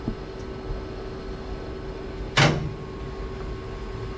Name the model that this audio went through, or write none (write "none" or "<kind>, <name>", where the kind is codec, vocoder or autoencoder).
none